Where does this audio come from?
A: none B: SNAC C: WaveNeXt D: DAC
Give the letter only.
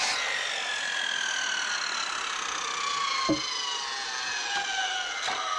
A